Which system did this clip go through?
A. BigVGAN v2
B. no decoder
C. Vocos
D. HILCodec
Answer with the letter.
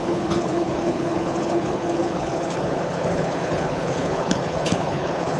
D